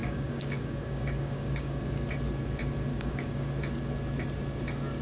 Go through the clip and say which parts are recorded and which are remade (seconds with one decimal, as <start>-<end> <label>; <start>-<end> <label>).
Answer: 0.0-1.8 remade; 1.8-2.9 recorded; 2.9-3.5 remade; 3.5-5.0 recorded